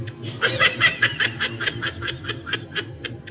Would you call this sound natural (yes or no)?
yes